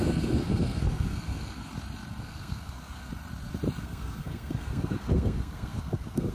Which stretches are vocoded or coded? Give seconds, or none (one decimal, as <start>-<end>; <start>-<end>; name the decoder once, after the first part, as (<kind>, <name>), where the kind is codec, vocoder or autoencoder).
0.0-1.7 (codec, SNAC); 2.2-3.1; 3.8-6.3

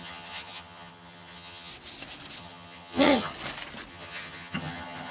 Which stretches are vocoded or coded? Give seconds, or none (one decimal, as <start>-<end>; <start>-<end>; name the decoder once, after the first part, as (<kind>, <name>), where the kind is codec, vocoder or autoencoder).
0.0-1.7 (vocoder, HiFi-GAN); 2.4-3.3; 3.9-5.1

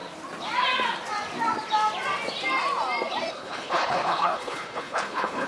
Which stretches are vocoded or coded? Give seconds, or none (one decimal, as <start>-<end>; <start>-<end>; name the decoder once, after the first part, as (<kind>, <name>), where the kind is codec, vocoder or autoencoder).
3.3-5.5 (codec, HILCodec)

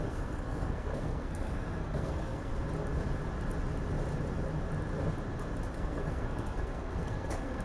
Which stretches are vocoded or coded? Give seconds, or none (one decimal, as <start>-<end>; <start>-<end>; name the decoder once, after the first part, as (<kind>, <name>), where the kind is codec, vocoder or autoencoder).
0.0-2.5 (codec, SNAC); 5.7-7.6